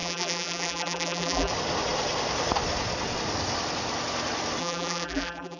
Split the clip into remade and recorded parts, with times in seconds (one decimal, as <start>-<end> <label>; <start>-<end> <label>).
0.0-1.5 remade; 1.5-4.6 recorded; 4.6-5.6 remade